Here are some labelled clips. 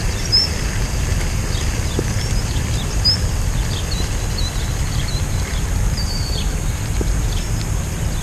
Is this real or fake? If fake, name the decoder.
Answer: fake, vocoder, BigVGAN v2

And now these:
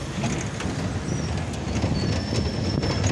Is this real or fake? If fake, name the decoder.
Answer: real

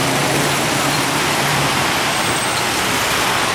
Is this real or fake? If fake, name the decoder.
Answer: fake, vocoder, BigVGAN v2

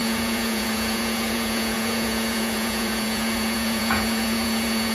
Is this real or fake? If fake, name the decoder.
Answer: fake, vocoder, Vocos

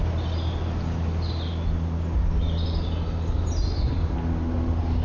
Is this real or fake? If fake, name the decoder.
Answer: real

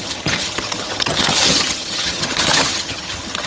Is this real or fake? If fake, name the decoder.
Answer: fake, vocoder, HiFi-GAN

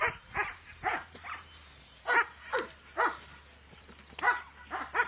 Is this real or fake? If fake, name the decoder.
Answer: real